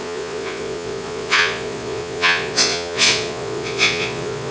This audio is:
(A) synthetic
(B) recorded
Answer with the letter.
A